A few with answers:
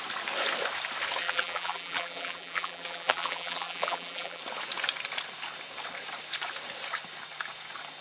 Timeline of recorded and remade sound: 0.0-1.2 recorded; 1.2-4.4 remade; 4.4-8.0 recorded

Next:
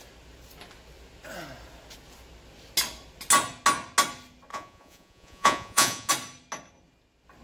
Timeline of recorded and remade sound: 0.0-4.5 recorded; 4.5-6.1 remade; 6.1-7.4 recorded

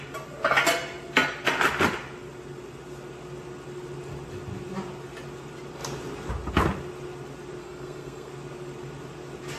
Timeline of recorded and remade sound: 0.0-7.6 recorded; 7.6-8.3 remade; 8.3-9.6 recorded

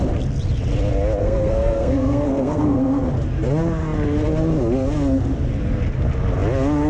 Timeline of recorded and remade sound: 0.0-1.2 recorded; 1.2-3.1 remade; 3.1-6.9 recorded

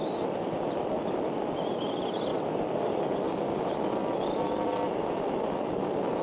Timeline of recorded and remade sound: 0.0-6.2 recorded

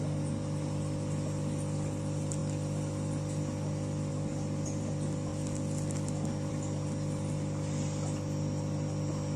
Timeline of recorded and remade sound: 0.0-9.4 recorded

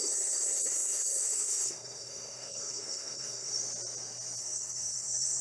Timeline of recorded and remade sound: 0.0-3.5 remade; 3.5-4.4 recorded; 4.4-5.4 remade

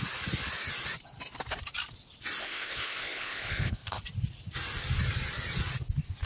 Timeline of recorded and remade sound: 0.0-2.4 recorded; 2.4-4.0 remade; 4.0-6.3 recorded